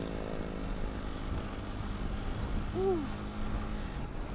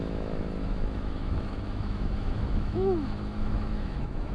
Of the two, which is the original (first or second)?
first